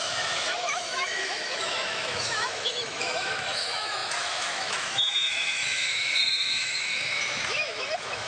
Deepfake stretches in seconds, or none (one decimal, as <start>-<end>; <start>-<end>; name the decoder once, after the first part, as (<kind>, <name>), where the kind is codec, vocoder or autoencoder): 0.0-8.3 (autoencoder, DAC-VAE)